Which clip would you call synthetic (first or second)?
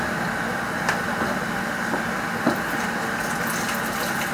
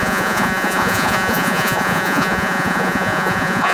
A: second